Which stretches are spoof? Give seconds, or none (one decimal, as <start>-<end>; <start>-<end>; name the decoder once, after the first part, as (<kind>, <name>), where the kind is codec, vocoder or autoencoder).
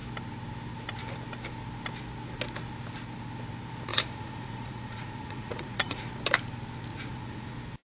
3.9-6.1 (vocoder, Vocos); 6.9-7.5